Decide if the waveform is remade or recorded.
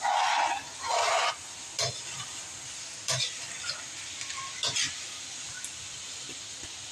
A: recorded